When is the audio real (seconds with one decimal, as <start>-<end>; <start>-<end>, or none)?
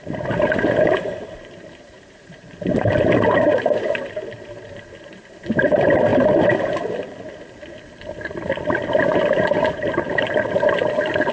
0.0-1.1; 4.8-9.1; 10.3-11.3